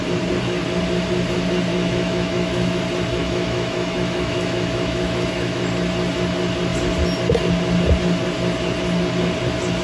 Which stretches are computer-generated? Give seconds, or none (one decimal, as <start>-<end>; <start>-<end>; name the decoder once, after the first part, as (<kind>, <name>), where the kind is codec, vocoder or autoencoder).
1.7-2.8 (autoencoder, DAC-VAE); 3.2-5.6